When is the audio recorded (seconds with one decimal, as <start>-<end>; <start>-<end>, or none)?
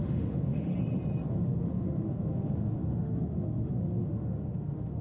0.7-1.3